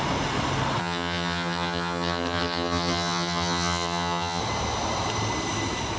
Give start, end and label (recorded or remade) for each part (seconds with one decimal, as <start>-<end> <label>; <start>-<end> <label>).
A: 0.0-0.8 recorded; 0.8-4.4 remade; 4.4-6.0 recorded

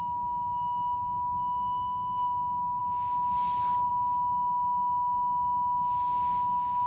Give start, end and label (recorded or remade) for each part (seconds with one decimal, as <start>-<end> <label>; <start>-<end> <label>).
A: 0.0-6.9 recorded

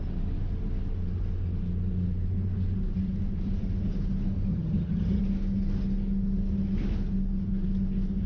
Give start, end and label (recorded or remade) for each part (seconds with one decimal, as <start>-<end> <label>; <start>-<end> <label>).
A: 0.0-4.5 recorded; 4.5-5.2 remade; 5.2-8.3 recorded

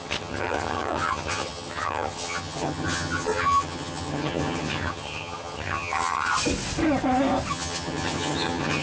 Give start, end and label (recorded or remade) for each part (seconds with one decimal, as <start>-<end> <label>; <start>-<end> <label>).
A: 0.0-6.3 remade; 6.3-7.5 recorded; 7.5-8.8 remade